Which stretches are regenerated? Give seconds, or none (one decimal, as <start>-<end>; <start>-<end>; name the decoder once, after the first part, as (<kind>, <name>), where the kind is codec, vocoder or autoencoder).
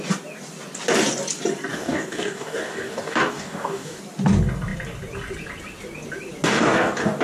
1.7-4.0 (codec, DAC); 6.5-7.2